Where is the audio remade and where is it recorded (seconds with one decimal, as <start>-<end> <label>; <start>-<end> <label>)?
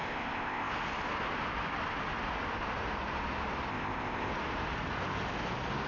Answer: 0.0-0.7 remade; 0.7-3.7 recorded; 3.7-4.3 remade; 4.3-5.9 recorded